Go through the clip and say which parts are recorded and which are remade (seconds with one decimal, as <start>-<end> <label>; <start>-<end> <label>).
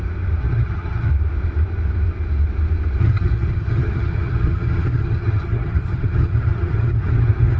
0.0-0.4 recorded; 0.4-1.1 remade; 1.1-3.0 recorded; 3.0-7.6 remade